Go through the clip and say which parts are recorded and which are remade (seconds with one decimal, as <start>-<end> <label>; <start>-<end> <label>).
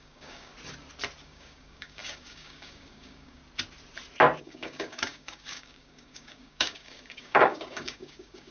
0.0-0.5 remade; 0.5-1.2 recorded; 1.2-3.4 remade; 3.4-4.4 recorded; 4.4-8.5 remade